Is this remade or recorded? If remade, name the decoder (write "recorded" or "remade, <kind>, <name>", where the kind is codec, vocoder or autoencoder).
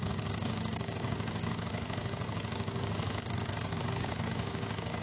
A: remade, codec, DAC